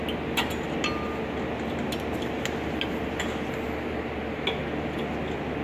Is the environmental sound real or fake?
real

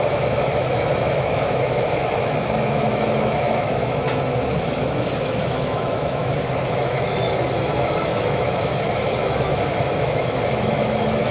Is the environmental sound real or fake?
fake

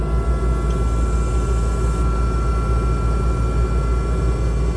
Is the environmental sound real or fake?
real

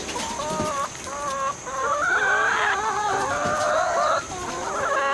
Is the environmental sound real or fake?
real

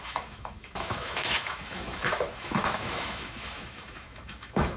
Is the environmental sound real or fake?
fake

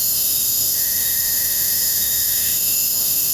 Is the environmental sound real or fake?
fake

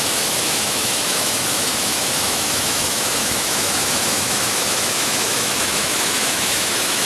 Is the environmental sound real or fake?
fake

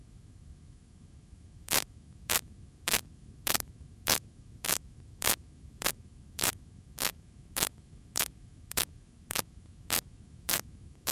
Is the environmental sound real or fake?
fake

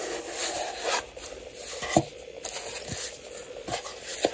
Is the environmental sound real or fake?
real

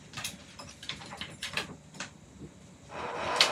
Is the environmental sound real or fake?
real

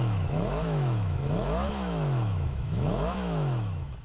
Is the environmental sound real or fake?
fake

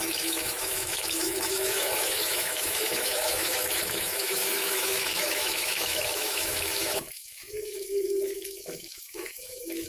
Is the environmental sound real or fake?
fake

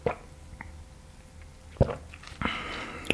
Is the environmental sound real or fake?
real